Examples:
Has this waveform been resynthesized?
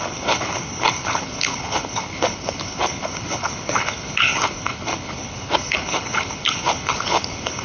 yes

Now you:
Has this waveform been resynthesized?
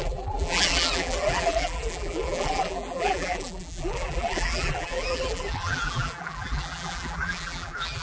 yes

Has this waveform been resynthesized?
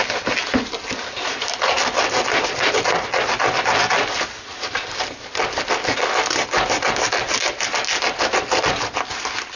no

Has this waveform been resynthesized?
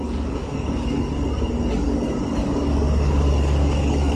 yes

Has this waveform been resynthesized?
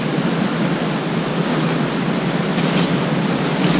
no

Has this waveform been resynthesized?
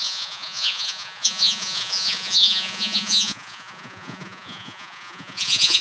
yes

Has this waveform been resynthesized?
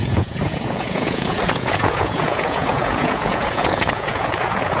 yes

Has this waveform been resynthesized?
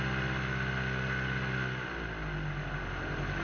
no